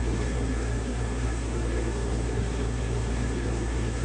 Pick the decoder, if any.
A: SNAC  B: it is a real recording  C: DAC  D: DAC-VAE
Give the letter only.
A